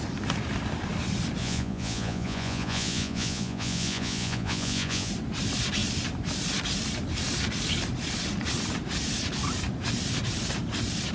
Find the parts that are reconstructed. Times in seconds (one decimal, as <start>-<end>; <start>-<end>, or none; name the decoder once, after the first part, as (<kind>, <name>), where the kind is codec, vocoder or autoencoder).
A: 1.4-5.1 (vocoder, Vocos)

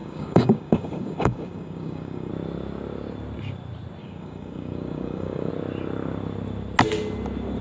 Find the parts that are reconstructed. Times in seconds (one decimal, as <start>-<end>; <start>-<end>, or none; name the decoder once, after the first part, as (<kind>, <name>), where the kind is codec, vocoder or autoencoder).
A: 0.0-2.3 (codec, DAC); 4.0-5.5

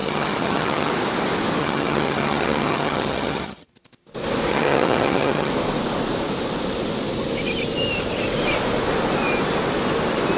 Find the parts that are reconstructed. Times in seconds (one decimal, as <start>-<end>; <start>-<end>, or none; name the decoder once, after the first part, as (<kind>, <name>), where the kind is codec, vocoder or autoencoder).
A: 0.0-0.9 (vocoder, HiFi-GAN); 1.6-3.7; 4.5-5.5

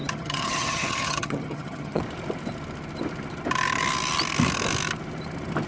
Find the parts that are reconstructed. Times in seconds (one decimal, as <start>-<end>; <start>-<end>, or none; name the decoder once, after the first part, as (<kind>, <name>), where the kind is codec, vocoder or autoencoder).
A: 0.0-2.0 (vocoder, HiFi-GAN)

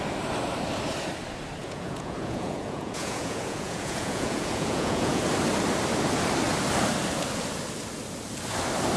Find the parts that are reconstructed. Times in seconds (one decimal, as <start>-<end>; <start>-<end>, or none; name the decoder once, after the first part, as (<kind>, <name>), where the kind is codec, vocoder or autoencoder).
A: 1.6-5.2 (vocoder, Vocos)